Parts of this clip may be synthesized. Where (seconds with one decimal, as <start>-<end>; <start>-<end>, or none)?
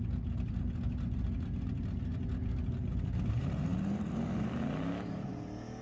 none